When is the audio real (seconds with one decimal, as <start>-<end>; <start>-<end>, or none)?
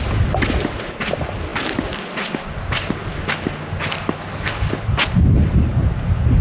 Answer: 0.0-6.4